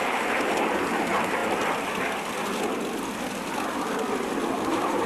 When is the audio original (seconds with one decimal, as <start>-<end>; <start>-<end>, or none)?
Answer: 1.4-4.5